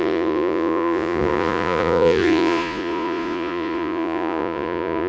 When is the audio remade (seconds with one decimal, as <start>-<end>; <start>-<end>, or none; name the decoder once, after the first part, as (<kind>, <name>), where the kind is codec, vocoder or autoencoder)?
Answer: 0.0-5.1 (vocoder, Vocos)

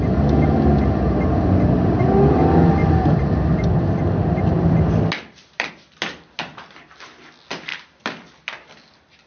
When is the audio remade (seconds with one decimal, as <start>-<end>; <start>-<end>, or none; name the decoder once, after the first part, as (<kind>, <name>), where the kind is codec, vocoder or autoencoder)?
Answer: none